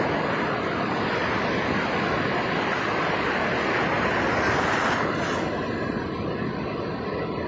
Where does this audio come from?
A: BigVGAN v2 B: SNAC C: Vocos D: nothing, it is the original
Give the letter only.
D